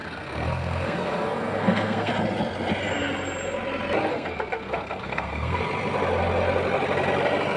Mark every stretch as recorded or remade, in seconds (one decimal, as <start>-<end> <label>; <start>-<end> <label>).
0.0-2.1 remade; 2.1-4.1 recorded; 4.1-5.6 remade; 5.6-7.6 recorded